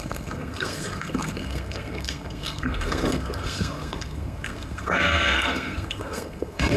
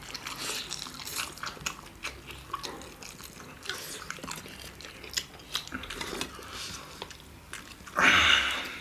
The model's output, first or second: first